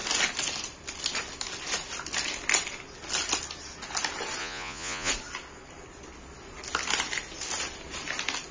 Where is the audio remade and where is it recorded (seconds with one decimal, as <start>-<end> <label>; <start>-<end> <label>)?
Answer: 0.0-4.4 recorded; 4.4-5.1 remade; 5.1-8.5 recorded